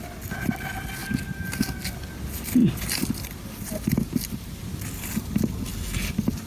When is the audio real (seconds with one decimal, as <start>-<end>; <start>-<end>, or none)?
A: 0.0-2.6; 4.5-6.5